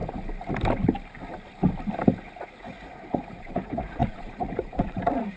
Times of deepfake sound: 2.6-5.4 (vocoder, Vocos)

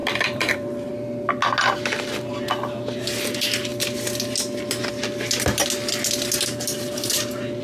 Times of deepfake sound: 0.0-0.9 (vocoder, BigVGAN v2)

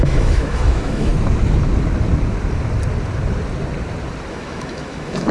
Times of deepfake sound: 0.0-1.1 (autoencoder, DAC-VAE); 4.3-5.3

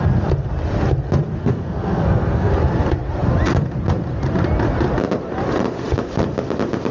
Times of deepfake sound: 1.4-2.5 (codec, SNAC)

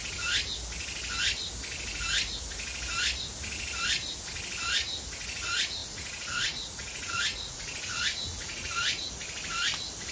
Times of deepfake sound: 5.8-9.1 (vocoder, Vocos)

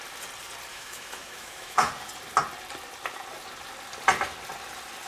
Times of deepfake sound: 0.7-1.9 (autoencoder, DAC-VAE)